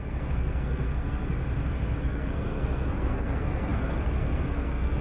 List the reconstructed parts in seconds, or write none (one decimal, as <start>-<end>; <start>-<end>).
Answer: 0.0-1.4; 2.0-5.0